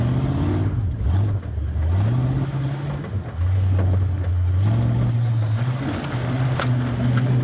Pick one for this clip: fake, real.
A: real